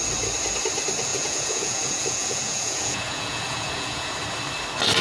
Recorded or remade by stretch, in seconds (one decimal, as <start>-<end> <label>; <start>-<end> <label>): 0.0-1.1 recorded; 1.1-4.1 remade; 4.1-5.0 recorded